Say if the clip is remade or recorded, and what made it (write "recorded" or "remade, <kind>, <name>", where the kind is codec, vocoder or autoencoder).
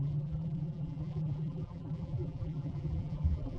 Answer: remade, vocoder, BigVGAN v2